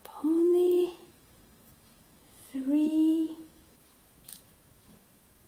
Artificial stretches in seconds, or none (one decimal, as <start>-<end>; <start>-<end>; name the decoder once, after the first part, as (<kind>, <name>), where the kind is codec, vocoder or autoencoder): 0.0-5.5 (autoencoder, DAC-VAE)